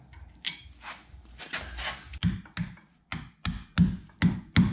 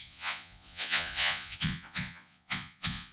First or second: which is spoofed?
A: second